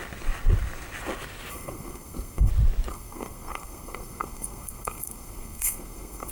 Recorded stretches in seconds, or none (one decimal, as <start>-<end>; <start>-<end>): 0.0-1.5; 2.5-2.9